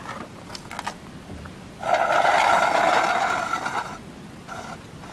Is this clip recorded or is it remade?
recorded